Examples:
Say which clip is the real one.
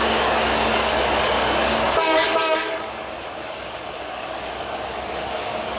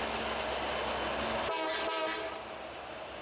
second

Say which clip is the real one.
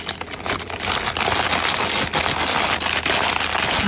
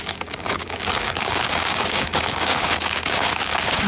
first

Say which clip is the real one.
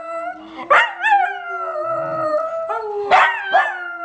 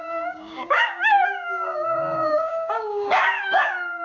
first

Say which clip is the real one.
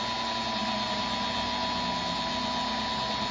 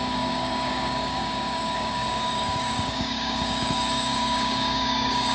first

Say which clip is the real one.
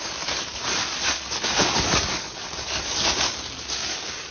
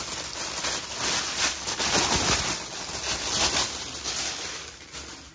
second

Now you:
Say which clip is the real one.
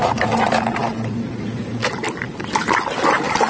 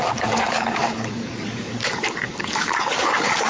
first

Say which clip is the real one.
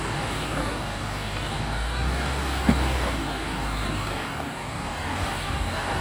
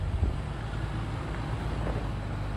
second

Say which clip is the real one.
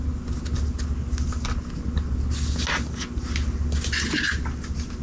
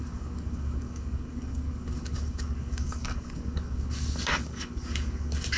first